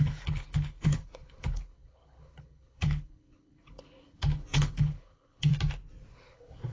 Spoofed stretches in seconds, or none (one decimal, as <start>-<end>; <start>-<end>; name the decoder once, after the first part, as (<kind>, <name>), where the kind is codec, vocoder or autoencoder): 0.0-5.5 (codec, HILCodec); 6.1-6.7